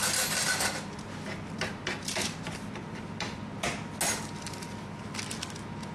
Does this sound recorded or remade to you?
recorded